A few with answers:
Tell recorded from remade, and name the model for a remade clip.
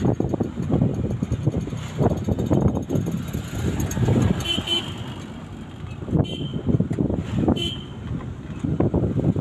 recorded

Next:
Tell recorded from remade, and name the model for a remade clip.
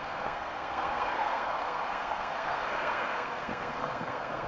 remade, codec, SNAC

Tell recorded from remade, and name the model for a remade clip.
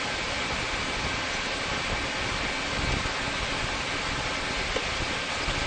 recorded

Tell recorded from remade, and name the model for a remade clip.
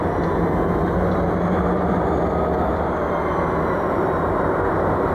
recorded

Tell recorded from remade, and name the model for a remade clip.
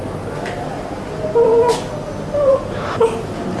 recorded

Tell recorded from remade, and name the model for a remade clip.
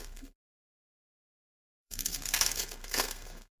remade, codec, SNAC